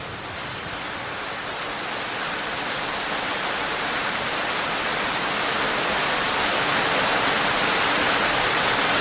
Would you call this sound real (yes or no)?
yes